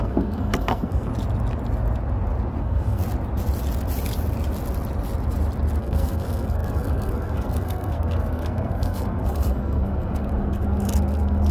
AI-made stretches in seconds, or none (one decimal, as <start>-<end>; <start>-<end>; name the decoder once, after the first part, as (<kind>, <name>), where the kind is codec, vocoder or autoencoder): 0.0-1.1 (codec, SNAC); 2.6-3.0; 5.8-11.5